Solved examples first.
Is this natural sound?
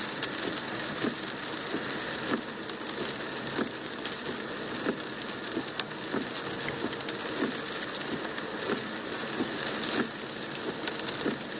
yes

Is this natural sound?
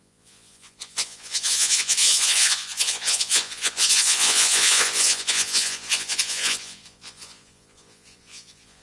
no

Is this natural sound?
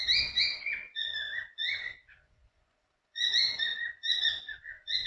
no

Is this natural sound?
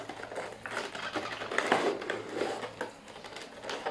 yes